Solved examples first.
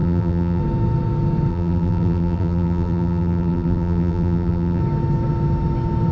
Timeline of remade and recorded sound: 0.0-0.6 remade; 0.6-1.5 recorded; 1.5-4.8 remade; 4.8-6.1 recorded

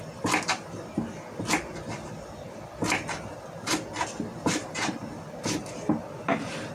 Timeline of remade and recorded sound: 0.0-4.3 recorded; 4.3-5.0 remade; 5.0-6.7 recorded

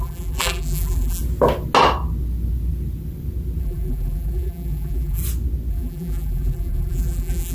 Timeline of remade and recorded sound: 0.0-1.2 remade; 1.2-3.6 recorded; 3.6-5.2 remade; 5.2-5.7 recorded; 5.7-7.5 remade

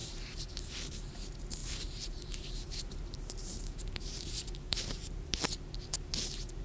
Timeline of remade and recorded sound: 0.0-0.5 remade; 0.5-1.6 recorded; 1.6-5.4 remade; 5.4-6.6 recorded